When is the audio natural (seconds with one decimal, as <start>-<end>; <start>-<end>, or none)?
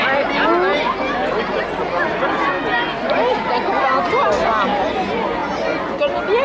0.0-6.4